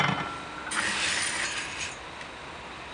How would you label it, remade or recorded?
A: recorded